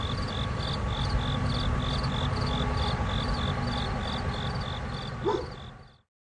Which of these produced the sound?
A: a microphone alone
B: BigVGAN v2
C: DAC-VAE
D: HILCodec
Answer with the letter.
A